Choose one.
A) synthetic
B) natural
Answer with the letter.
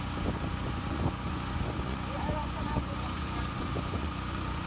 A